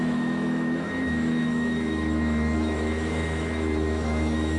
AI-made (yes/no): yes